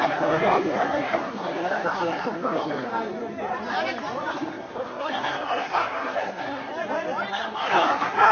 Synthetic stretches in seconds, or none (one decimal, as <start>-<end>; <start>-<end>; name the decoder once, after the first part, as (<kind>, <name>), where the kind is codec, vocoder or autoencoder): 0.0-2.9 (codec, SNAC); 4.3-6.7; 7.3-8.3